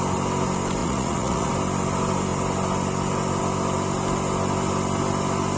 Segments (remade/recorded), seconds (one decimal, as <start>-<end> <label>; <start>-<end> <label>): 0.0-0.8 recorded; 0.8-1.5 remade; 1.5-5.6 recorded